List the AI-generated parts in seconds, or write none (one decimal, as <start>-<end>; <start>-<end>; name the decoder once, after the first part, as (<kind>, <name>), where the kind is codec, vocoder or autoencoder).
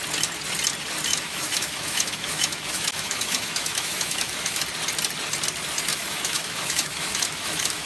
1.1-4.6 (autoencoder, DAC-VAE); 5.9-7.9